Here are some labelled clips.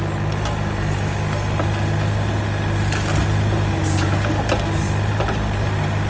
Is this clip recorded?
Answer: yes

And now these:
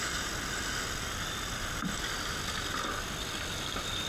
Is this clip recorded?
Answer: yes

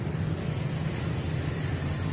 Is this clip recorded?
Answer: yes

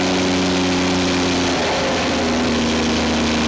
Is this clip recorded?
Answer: yes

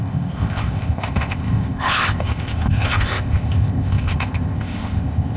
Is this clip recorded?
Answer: no